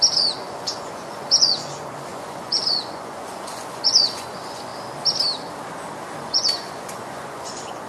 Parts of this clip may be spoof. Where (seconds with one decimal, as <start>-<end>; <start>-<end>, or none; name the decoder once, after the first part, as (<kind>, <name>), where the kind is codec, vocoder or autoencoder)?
0.0-4.7 (vocoder, Vocos); 6.2-7.9